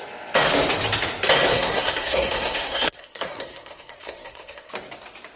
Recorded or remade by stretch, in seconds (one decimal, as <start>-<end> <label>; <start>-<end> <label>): 0.0-1.5 recorded; 1.5-4.7 remade; 4.7-5.4 recorded